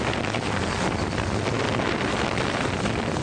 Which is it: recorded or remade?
recorded